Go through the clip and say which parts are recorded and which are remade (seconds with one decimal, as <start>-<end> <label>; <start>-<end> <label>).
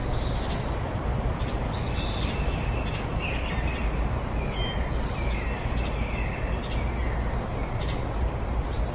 0.0-8.9 recorded